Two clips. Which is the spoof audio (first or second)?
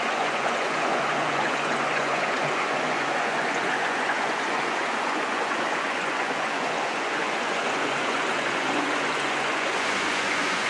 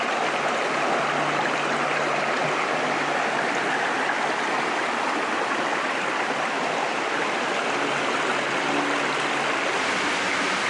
first